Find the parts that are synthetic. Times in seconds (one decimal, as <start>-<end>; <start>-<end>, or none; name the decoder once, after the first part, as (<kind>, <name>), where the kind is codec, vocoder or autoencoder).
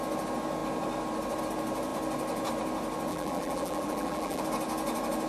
3.1-4.4 (vocoder, BigVGAN v2)